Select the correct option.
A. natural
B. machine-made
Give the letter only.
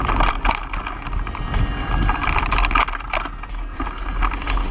A